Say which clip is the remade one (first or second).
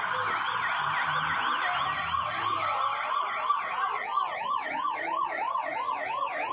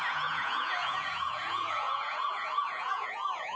second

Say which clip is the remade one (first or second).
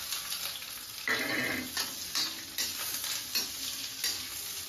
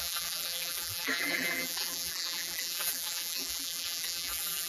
second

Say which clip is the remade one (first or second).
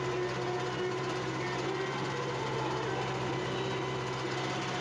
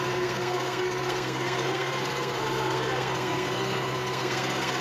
second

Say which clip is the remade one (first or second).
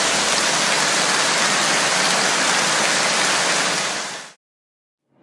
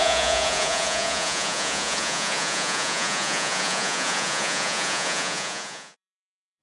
second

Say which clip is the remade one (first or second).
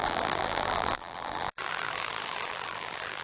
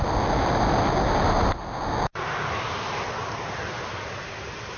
first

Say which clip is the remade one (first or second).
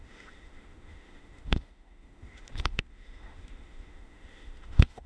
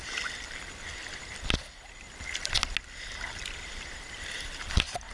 first